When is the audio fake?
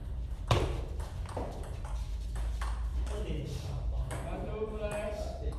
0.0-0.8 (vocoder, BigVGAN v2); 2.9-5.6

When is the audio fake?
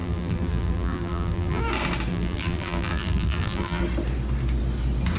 0.0-1.6 (vocoder, BigVGAN v2); 2.1-3.8